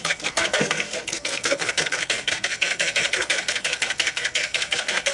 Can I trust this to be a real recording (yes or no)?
no